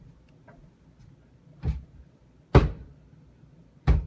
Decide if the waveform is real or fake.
real